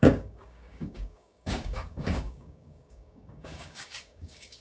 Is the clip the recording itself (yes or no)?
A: no